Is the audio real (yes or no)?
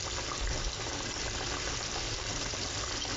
yes